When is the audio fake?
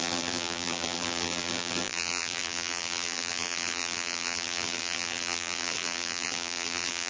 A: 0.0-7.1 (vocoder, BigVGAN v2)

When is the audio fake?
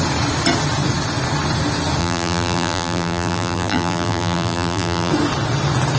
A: 2.0-5.1 (vocoder, BigVGAN v2)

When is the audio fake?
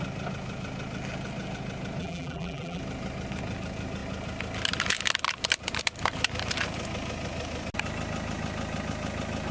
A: 2.0-2.8 (vocoder, BigVGAN v2)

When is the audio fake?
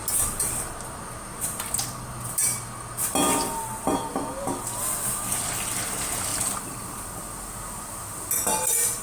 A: 6.3-7.2 (vocoder, BigVGAN v2)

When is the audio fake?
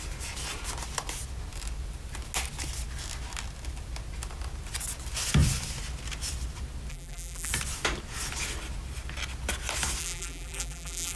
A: 6.9-7.5 (vocoder, BigVGAN v2); 10.0-11.2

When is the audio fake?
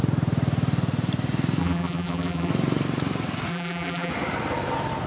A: 1.6-2.5 (vocoder, BigVGAN v2); 3.5-4.1